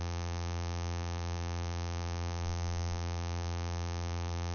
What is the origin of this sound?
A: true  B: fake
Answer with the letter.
B